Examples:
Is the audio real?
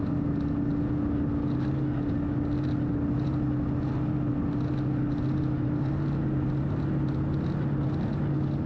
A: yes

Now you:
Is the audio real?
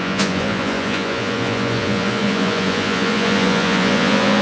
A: no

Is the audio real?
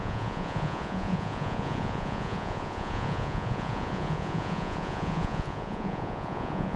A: no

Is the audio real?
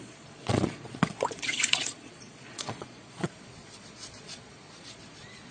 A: no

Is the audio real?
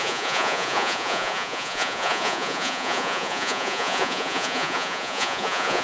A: no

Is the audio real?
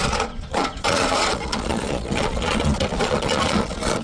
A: no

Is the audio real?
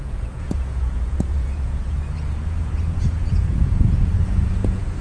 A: no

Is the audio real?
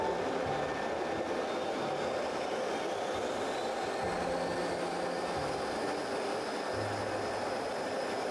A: yes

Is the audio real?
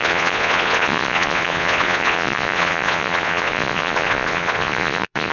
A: no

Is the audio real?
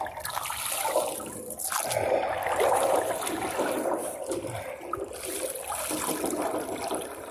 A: yes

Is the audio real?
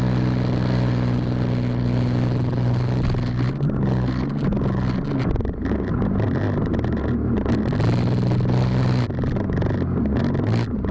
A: yes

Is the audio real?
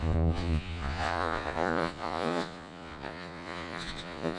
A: no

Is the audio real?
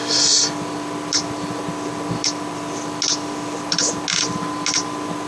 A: yes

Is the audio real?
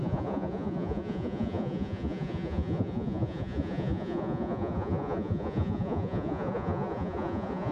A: no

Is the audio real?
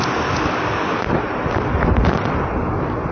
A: yes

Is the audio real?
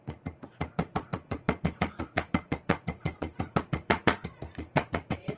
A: no